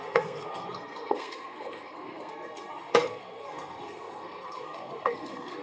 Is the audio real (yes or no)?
no